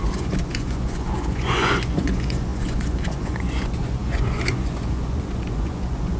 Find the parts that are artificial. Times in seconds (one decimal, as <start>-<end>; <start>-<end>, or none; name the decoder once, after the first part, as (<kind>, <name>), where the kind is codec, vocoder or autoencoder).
0.0-6.2 (vocoder, Vocos)